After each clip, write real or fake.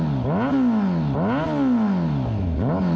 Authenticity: real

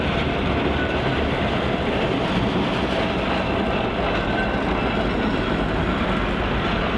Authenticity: real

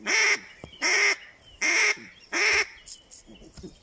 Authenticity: real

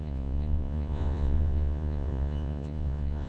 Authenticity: fake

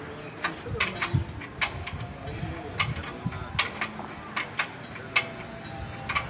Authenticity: real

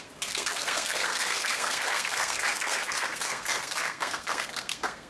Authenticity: fake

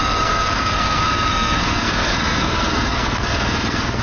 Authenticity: fake